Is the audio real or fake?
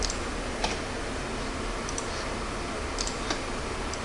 real